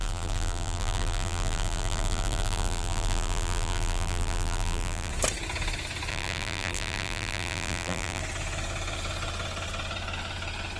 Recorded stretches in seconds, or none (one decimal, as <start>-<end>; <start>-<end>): 5.1-6.1; 8.2-10.8